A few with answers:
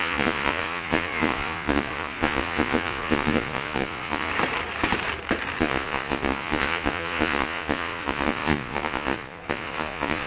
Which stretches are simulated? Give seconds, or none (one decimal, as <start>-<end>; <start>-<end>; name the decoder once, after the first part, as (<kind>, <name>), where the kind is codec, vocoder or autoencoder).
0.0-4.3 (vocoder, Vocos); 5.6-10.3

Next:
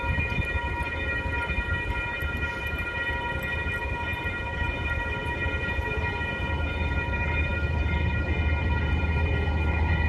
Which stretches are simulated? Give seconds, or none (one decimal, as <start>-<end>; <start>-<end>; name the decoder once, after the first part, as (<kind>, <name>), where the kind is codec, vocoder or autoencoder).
none

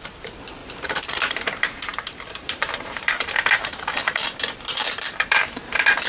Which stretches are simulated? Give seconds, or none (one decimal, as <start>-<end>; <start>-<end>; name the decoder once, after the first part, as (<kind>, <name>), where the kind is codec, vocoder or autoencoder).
0.0-6.1 (vocoder, BigVGAN v2)

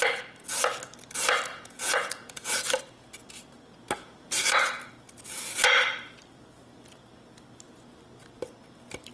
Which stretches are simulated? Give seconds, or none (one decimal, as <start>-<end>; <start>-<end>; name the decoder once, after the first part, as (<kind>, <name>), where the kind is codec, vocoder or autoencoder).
1.5-2.8 (vocoder, Vocos); 4.0-4.9

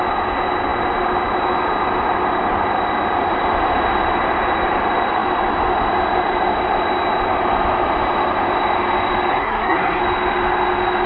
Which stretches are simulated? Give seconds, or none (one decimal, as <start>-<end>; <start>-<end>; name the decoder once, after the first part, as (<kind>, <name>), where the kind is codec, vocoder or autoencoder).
9.3-10.0 (codec, SNAC)

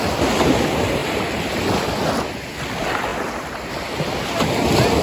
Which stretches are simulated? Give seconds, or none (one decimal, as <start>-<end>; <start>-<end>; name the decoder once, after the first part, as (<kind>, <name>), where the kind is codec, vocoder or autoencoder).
none

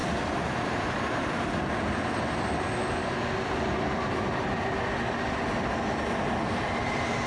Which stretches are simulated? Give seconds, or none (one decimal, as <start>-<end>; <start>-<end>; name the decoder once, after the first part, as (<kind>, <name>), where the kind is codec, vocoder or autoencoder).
none

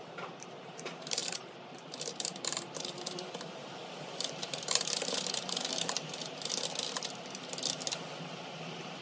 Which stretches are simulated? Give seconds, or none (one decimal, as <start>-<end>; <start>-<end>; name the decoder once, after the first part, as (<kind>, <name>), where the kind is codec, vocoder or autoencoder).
0.0-6.5 (vocoder, BigVGAN v2)